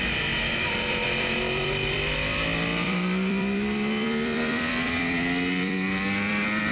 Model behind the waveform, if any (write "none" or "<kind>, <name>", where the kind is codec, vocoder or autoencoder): vocoder, BigVGAN v2